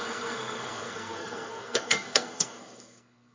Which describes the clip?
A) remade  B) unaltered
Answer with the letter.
A